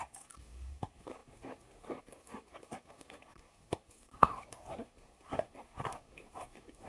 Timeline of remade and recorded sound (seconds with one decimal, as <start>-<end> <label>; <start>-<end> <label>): 0.0-6.9 remade